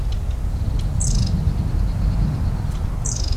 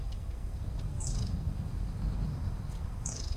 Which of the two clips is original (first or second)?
first